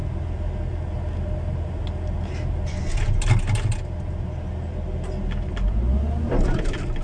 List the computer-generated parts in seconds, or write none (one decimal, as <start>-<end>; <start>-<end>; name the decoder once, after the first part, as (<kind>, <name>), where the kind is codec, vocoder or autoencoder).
none